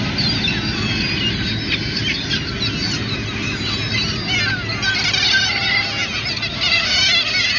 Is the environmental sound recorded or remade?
recorded